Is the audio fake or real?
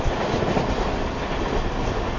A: real